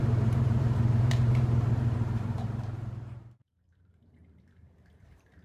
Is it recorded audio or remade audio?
remade